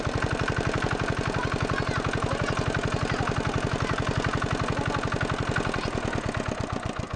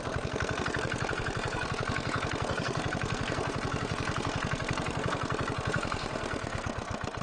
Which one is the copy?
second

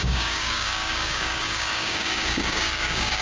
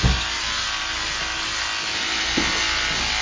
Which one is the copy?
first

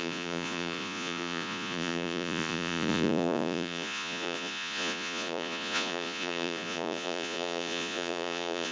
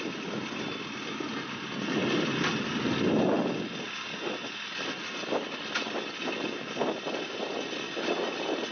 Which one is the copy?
first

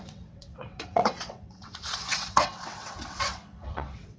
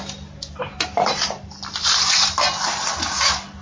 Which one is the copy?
first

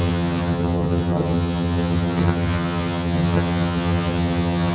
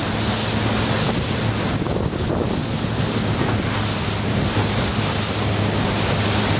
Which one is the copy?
first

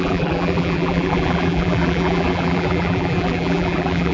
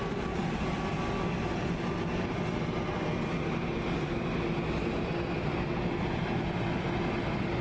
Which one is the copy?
first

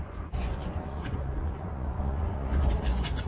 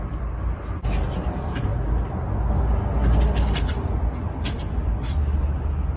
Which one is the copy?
first